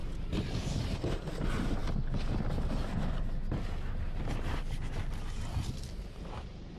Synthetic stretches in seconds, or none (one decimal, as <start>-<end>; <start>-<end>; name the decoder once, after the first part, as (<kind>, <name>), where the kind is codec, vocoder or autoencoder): none

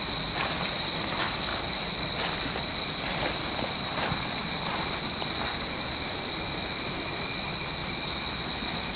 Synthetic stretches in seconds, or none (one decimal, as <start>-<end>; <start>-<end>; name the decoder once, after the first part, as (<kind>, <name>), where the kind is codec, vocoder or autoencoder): 1.5-2.3 (vocoder, BigVGAN v2); 3.1-4.0; 4.4-6.3; 7.8-8.3

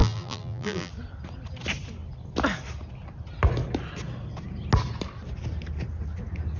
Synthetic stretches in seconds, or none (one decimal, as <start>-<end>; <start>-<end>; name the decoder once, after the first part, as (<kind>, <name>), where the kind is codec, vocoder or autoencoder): 0.0-0.9 (vocoder, BigVGAN v2)

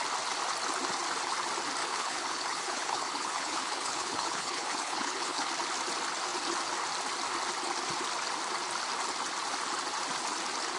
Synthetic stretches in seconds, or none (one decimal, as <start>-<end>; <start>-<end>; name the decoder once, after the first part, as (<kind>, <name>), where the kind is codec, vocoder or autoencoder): 1.8-5.5 (codec, HILCodec)

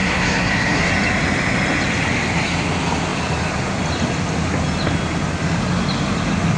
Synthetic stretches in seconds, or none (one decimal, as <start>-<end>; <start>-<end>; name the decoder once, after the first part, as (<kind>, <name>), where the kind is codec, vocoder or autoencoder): 0.0-0.9 (codec, SNAC)

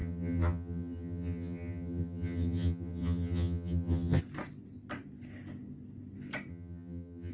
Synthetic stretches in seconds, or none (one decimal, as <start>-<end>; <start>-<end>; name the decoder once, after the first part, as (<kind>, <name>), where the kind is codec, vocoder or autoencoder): 0.0-4.2 (vocoder, HiFi-GAN); 6.5-7.3

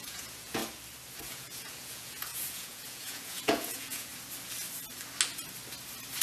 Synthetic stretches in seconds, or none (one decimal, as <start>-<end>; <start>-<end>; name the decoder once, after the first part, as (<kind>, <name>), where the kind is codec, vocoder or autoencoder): 0.0-0.6 (vocoder, Vocos); 1.2-4.1